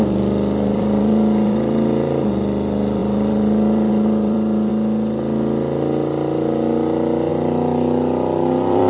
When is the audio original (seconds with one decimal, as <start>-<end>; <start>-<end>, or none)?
4.7-7.3

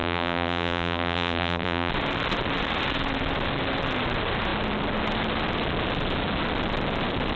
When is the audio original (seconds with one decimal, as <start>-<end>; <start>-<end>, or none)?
1.9-7.4

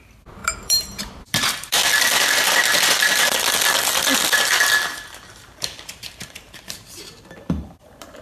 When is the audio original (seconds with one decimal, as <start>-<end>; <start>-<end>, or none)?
1.8-5.3